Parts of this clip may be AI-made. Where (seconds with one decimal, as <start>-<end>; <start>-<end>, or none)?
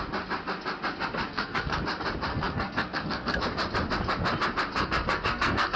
1.3-1.8; 2.3-3.4; 4.7-5.8